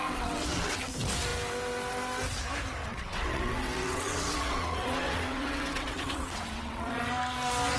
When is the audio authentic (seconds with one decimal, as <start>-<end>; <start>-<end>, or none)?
0.9-2.8; 7.1-7.8